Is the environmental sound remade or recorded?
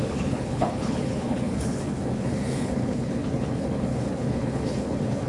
remade